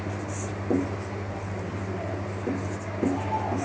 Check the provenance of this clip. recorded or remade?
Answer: recorded